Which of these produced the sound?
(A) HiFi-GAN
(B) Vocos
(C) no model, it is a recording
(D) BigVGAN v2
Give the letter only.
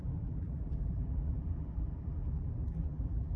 D